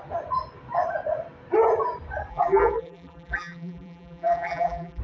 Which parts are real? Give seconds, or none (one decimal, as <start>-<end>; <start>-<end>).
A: 0.0-2.3

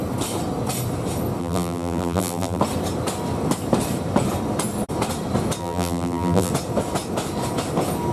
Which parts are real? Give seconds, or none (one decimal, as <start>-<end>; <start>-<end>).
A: 0.0-1.4; 2.6-5.6; 6.5-8.1

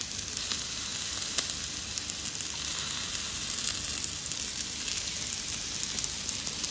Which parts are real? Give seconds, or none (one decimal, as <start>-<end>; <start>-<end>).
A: 0.0-6.7

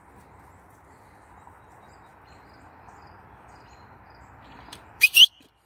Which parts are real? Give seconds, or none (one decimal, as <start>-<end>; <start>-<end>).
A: 0.0-2.1

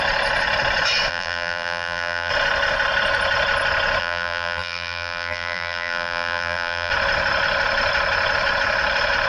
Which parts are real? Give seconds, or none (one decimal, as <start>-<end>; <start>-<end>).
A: 0.0-1.1; 2.3-4.0; 6.9-9.3

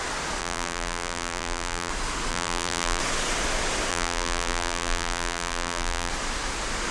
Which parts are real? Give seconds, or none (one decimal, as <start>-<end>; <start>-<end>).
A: 0.0-0.4; 1.9-2.3; 3.0-3.9; 6.1-6.9

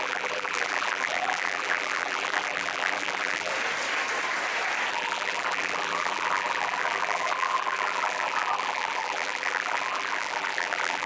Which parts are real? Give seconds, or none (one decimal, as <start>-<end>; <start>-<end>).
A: 3.5-4.9

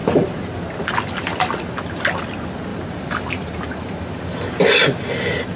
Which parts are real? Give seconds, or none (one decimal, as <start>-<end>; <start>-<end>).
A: 0.6-2.7; 4.5-5.6